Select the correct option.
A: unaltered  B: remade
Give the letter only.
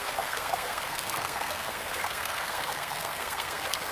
B